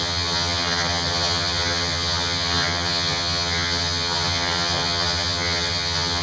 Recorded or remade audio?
remade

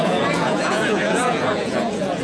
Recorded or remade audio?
remade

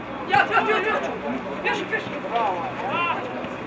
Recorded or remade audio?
recorded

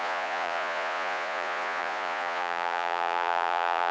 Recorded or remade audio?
remade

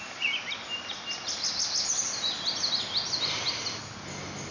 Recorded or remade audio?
recorded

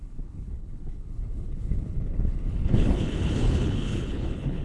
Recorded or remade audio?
remade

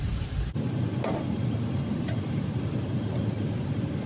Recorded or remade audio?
recorded